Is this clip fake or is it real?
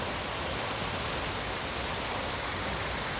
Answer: real